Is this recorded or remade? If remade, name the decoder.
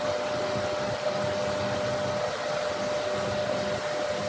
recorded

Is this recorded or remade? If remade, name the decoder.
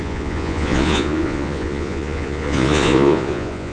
remade, vocoder, Vocos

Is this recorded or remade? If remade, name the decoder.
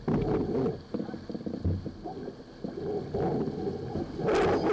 recorded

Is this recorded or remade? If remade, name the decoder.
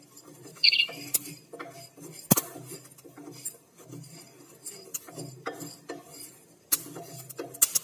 recorded